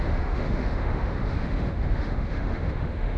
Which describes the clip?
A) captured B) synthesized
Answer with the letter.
B